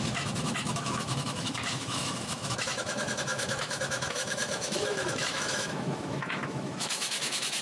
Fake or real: fake